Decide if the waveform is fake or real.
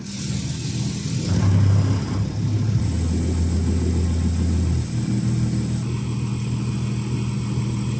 real